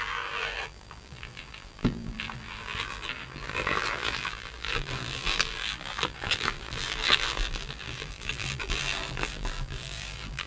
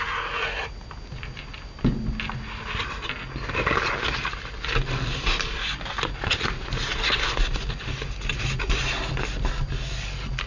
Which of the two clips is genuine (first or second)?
second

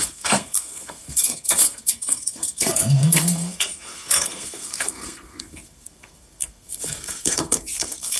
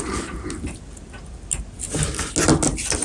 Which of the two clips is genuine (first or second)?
second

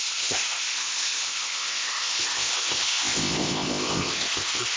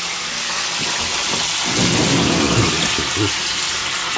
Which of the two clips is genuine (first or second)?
second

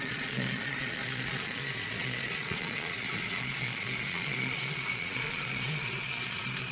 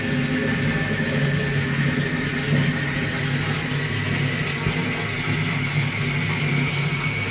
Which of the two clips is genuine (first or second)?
second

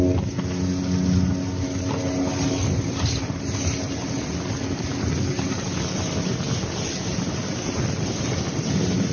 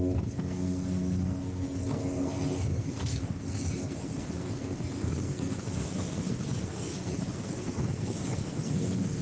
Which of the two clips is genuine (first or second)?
first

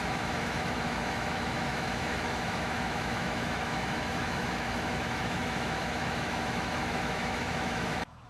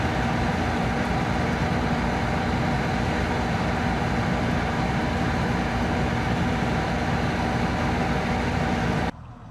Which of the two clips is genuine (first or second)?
second